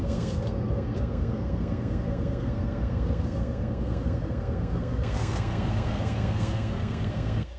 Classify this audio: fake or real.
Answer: fake